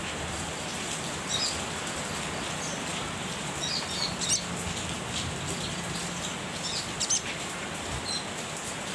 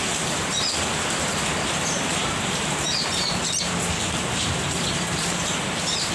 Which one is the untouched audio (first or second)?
first